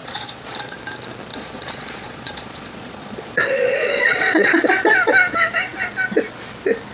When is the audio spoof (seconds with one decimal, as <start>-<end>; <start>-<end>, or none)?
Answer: 0.0-0.8; 1.3-4.7